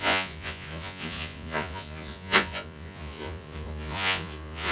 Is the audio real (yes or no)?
no